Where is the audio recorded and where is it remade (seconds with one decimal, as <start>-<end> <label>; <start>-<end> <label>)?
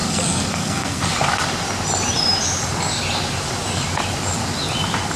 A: 0.0-1.1 remade; 1.1-5.2 recorded